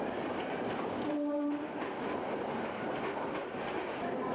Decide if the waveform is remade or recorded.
recorded